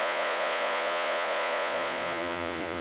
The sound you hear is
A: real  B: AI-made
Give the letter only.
B